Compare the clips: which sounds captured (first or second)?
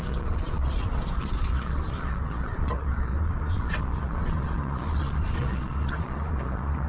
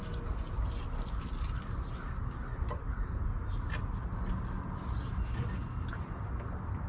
second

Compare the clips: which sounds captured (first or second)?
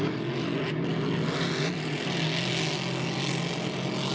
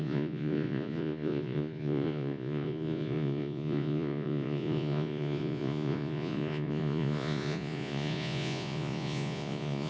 first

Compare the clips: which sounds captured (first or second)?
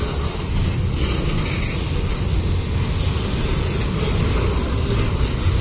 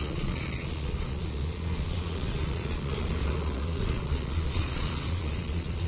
first